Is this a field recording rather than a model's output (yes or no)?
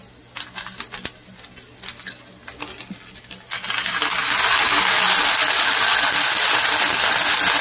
yes